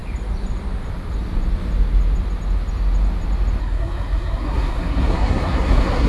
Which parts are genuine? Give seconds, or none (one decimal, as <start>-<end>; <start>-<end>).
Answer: 0.0-3.6